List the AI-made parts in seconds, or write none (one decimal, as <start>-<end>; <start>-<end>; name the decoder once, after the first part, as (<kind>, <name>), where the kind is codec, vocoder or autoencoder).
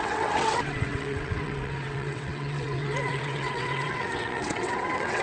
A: 0.0-5.2 (vocoder, WaveNeXt)